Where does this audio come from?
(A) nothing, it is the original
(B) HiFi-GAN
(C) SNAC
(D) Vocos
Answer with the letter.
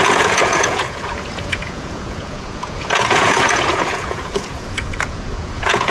D